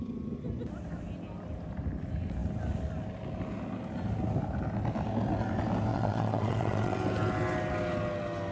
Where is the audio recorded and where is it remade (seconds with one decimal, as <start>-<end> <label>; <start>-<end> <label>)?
0.0-5.9 recorded; 5.9-7.0 remade; 7.0-8.5 recorded